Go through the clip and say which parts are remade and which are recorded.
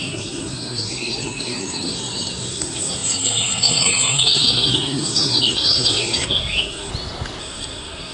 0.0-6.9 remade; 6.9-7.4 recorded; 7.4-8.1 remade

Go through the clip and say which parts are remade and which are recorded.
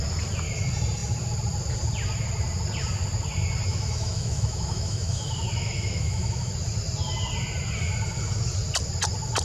0.0-3.7 recorded; 3.7-6.5 remade; 6.5-9.4 recorded